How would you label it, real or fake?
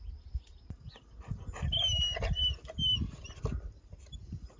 real